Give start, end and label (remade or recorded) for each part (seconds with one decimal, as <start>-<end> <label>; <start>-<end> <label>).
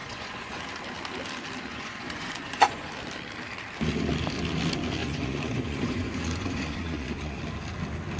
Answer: 0.0-0.6 remade; 0.6-1.7 recorded; 1.7-2.9 remade; 2.9-5.0 recorded; 5.0-7.4 remade; 7.4-8.2 recorded